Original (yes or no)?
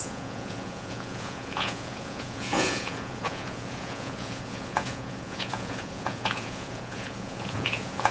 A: no